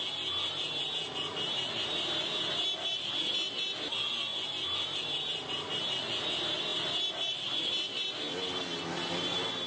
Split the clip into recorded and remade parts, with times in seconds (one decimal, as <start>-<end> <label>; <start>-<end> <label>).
0.0-9.7 recorded